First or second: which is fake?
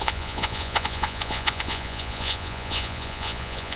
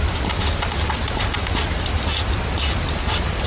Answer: first